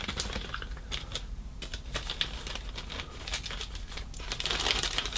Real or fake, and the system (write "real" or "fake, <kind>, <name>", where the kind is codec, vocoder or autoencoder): real